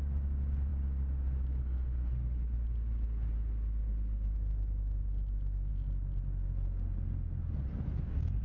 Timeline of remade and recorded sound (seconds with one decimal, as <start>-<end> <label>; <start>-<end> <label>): 0.0-8.4 recorded